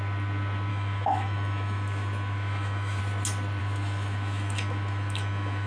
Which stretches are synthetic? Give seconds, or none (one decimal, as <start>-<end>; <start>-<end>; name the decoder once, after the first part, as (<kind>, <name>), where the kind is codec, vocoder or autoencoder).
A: 0.7-3.0 (autoencoder, DAC-VAE); 3.6-5.7